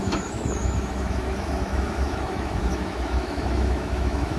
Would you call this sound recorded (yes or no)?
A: no